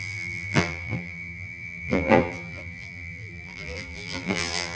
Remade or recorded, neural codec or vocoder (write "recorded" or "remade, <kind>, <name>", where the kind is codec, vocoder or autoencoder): remade, vocoder, BigVGAN v2